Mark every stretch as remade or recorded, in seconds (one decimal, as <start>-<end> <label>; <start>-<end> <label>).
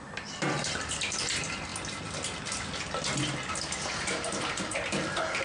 0.0-1.7 remade; 1.7-3.5 recorded; 3.5-5.4 remade